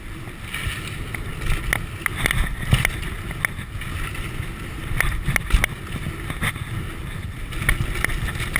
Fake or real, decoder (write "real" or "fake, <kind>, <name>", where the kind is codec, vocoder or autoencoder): real